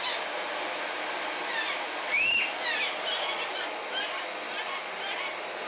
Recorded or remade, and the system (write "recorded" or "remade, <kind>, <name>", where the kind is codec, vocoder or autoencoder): recorded